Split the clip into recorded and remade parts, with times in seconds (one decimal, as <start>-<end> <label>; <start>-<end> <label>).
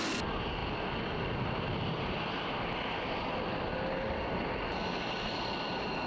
0.0-6.1 recorded